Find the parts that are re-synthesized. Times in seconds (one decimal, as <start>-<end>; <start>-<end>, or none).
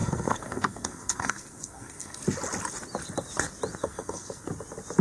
0.0-2.2; 3.8-4.5